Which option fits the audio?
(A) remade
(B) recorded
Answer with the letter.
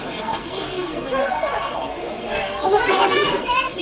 A